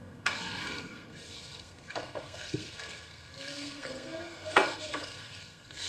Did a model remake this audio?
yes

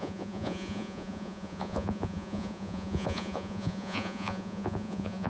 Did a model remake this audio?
yes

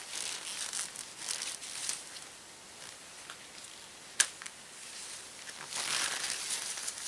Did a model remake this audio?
no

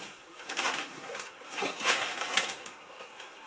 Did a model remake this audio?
yes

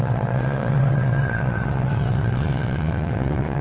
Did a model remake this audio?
yes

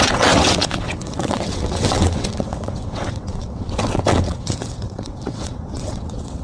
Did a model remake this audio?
yes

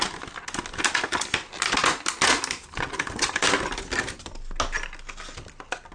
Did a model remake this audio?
no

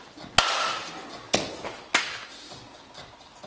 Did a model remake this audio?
no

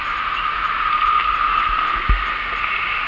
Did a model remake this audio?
no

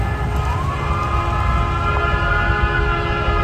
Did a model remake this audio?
no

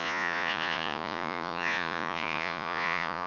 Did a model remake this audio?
yes